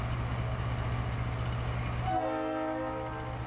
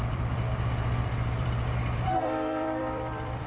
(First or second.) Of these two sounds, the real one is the first